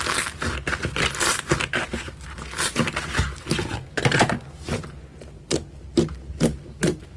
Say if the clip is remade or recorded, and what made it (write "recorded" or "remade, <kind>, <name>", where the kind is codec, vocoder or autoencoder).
recorded